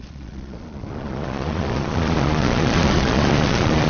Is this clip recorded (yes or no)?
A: no